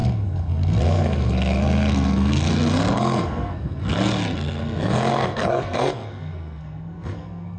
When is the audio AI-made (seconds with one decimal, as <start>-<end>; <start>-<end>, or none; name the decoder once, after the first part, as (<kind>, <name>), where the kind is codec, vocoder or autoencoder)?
0.0-7.6 (codec, SNAC)